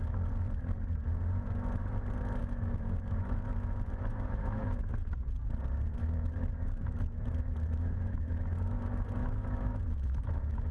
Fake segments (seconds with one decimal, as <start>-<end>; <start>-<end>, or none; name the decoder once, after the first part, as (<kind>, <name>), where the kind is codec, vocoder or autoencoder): 2.4-4.8 (autoencoder, DAC-VAE); 6.0-10.7